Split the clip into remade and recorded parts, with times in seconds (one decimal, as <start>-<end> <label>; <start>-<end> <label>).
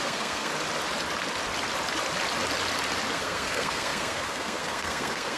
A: 0.0-0.5 remade; 0.5-3.1 recorded; 3.1-5.4 remade